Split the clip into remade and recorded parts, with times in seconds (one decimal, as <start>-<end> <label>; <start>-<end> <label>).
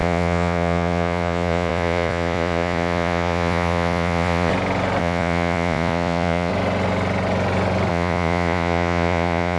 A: 0.0-4.5 remade; 4.5-5.0 recorded; 5.0-6.5 remade; 6.5-7.9 recorded; 7.9-9.6 remade